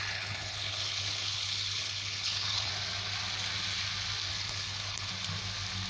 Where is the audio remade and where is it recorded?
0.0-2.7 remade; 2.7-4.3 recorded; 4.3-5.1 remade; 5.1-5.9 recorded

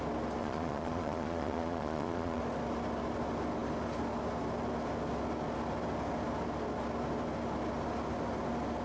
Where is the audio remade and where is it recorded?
0.0-0.4 recorded; 0.4-2.4 remade; 2.4-8.8 recorded

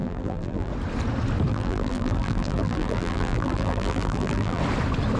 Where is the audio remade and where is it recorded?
0.0-0.7 remade; 0.7-1.5 recorded; 1.5-4.6 remade; 4.6-5.2 recorded